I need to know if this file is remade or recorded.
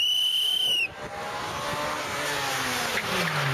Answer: recorded